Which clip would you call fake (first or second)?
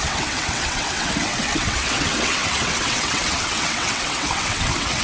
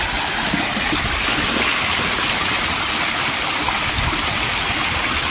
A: first